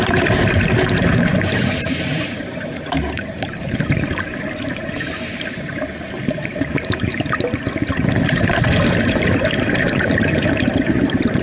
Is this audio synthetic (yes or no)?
yes